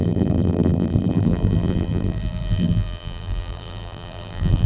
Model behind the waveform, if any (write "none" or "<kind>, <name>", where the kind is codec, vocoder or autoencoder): vocoder, BigVGAN v2